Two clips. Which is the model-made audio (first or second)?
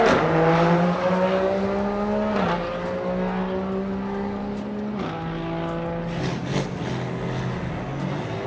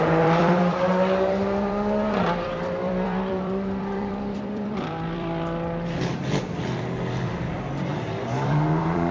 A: second